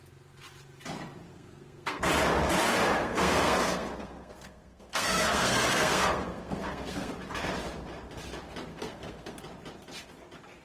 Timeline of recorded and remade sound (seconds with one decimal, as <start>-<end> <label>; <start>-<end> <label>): 0.0-1.3 recorded; 1.3-2.1 remade; 2.1-3.0 recorded; 3.0-7.1 remade; 7.1-8.7 recorded; 8.7-9.4 remade; 9.4-10.6 recorded